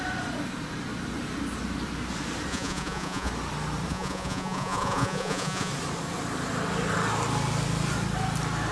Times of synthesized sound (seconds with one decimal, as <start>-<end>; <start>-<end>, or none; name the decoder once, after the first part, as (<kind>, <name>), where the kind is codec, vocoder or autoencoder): 2.5-3.3 (vocoder, Vocos); 3.9-5.7